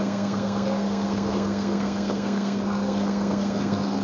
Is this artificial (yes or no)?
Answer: yes